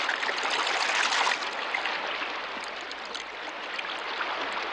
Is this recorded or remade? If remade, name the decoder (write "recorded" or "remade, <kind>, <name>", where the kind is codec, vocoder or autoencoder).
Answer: recorded